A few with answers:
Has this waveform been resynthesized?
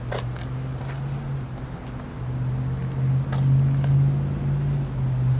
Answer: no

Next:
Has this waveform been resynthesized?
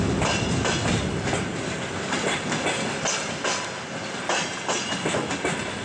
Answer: no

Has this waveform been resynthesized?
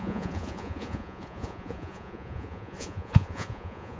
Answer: yes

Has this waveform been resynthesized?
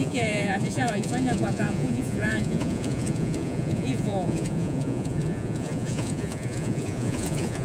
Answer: yes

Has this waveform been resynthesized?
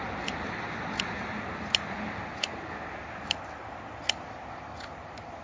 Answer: no